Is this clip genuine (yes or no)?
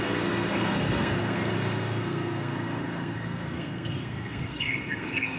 no